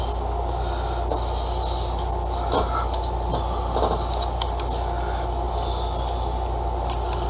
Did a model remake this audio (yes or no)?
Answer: no